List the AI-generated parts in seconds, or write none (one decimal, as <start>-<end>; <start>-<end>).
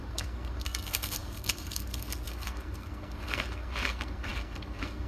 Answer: 0.0-5.1